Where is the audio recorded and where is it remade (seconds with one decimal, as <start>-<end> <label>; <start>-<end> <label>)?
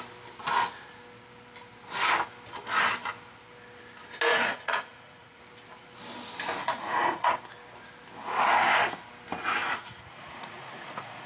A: 0.0-4.3 recorded; 4.3-5.4 remade; 5.4-6.6 recorded; 6.6-7.4 remade; 7.4-9.6 recorded; 9.6-11.3 remade